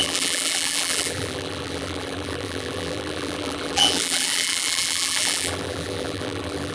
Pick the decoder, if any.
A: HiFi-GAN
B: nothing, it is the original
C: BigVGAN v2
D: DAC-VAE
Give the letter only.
C